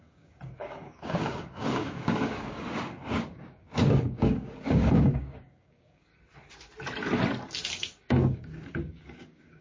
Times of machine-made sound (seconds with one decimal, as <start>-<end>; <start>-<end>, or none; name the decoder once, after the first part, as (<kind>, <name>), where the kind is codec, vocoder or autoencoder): 0.0-6.1 (codec, DAC); 7.8-9.6